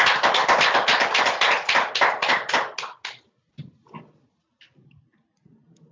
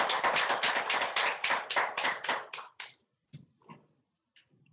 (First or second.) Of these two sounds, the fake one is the second